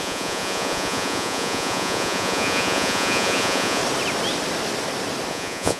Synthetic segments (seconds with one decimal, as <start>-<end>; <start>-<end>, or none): 0.0-3.8; 5.3-5.8

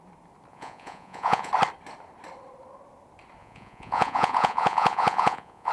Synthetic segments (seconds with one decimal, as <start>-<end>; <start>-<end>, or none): 0.5-1.5; 3.4-5.7